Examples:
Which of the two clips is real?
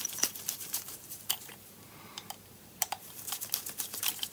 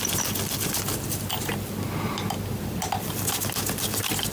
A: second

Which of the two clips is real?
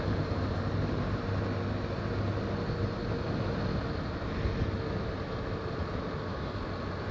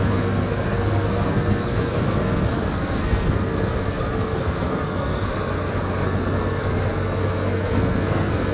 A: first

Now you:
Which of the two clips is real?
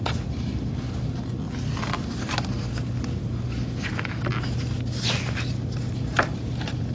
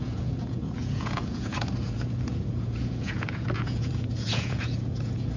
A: first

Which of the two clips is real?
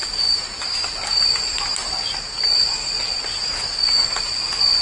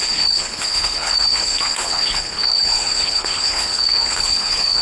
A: first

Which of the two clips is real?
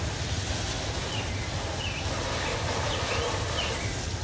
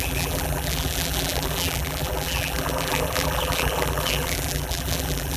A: first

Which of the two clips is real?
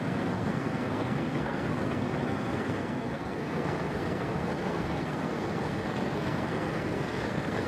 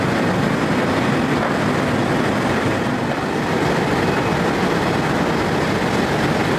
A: second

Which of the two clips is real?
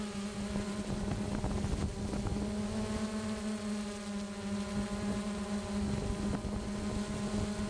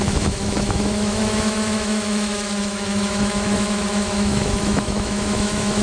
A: first